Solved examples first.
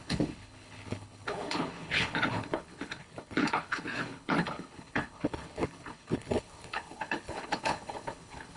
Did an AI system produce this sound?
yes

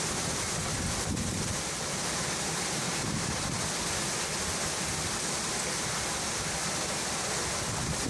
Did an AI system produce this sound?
no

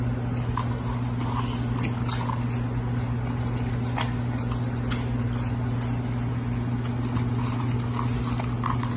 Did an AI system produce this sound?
no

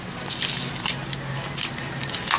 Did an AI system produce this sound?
no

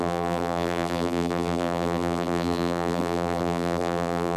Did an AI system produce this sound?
yes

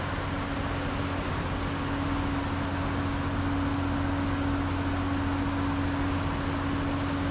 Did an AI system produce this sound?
no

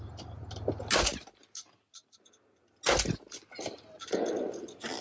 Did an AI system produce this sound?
no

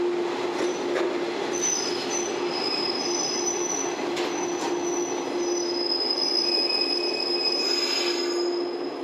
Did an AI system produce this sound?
no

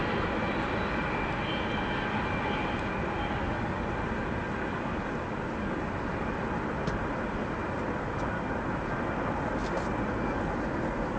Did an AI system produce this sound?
no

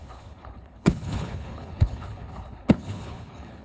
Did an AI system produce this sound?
yes